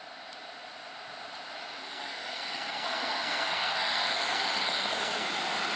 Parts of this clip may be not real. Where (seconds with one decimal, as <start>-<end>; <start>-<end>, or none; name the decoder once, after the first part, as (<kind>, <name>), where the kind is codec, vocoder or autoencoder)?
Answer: 1.8-5.3 (codec, SNAC)